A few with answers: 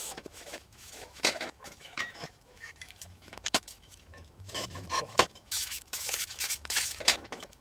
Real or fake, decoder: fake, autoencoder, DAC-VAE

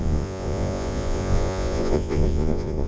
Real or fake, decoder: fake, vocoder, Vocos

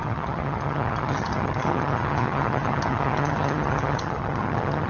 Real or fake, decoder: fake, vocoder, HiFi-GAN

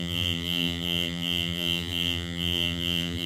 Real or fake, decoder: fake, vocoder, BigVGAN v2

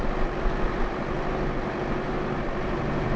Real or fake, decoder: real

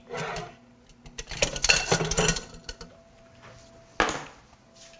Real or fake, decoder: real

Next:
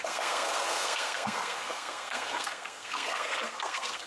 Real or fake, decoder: fake, codec, SNAC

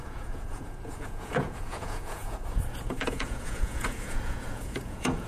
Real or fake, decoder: fake, vocoder, Vocos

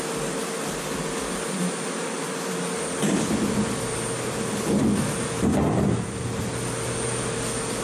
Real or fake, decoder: real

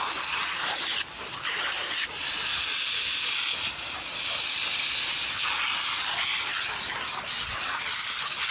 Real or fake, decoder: real